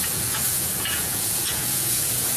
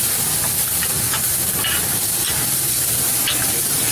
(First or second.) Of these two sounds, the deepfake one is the first